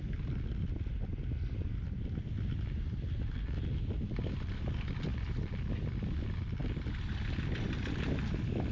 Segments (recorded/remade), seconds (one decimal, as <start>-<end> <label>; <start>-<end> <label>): 0.0-5.1 recorded; 5.1-5.6 remade; 5.6-8.7 recorded